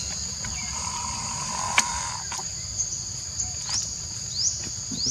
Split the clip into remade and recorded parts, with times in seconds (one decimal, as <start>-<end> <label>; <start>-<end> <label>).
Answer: 0.0-0.6 recorded; 0.6-1.5 remade; 1.5-5.1 recorded